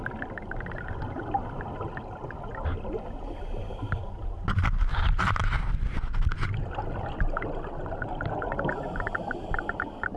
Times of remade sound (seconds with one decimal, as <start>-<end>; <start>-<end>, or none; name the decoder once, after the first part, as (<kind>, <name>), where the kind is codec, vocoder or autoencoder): none

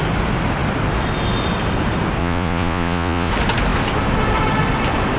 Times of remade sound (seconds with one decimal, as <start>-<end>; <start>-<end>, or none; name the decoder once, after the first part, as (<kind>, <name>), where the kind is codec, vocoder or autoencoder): 2.2-3.3 (vocoder, Vocos)

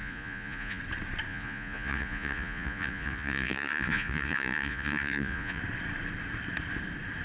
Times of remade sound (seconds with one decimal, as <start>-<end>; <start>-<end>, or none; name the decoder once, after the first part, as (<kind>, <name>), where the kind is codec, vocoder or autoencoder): 0.0-0.8 (vocoder, Vocos); 1.3-5.6

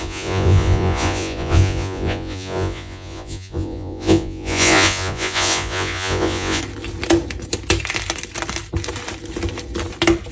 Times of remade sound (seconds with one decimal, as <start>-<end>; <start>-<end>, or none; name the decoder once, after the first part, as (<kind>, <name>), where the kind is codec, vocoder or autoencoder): 0.0-6.6 (vocoder, Vocos)

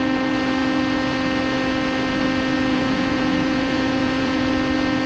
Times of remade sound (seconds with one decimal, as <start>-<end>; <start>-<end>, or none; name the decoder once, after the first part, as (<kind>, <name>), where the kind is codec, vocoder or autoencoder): 2.7-4.5 (vocoder, Vocos)

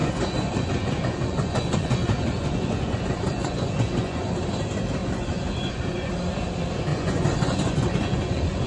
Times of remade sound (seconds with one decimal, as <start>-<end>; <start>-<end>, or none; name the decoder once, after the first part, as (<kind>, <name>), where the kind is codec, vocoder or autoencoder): 0.0-4.3 (vocoder, Vocos); 5.0-6.1; 6.9-8.7

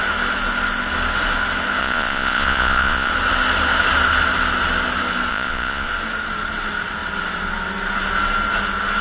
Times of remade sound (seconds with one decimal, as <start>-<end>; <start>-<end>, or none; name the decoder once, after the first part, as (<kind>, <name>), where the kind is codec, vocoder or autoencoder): 1.8-3.1 (vocoder, Vocos); 5.3-5.9